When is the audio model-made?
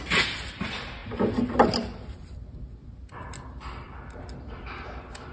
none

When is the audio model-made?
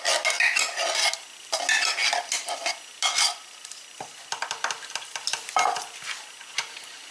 none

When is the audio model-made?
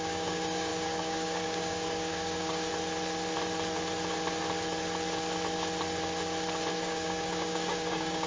0.0-2.7 (codec, DAC); 6.7-8.3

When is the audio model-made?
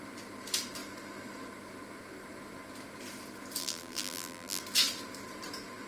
3.6-4.6 (vocoder, BigVGAN v2)